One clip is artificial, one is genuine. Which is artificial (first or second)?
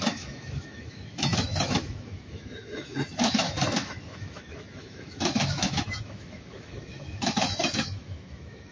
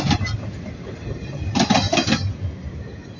first